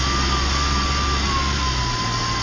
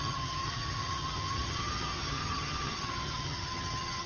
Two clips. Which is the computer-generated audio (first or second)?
second